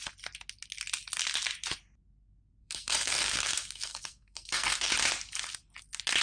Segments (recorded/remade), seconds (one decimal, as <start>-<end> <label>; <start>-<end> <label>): 0.0-2.6 recorded; 2.6-4.9 remade; 4.9-6.2 recorded